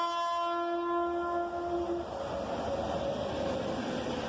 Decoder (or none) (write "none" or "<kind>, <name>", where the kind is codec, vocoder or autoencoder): none